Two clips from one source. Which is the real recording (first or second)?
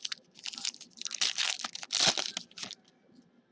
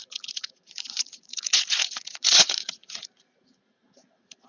first